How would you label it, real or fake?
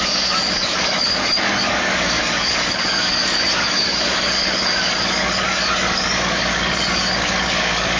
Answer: fake